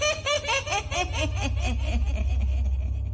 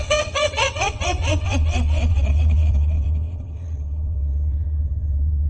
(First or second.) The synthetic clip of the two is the second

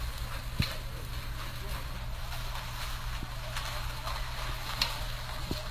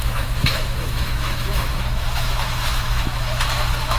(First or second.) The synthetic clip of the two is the second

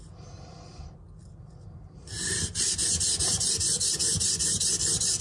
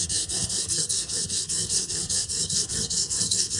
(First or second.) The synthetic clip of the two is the second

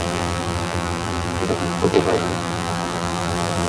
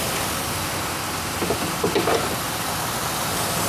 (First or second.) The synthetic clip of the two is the first